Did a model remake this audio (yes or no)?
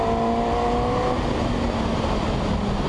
no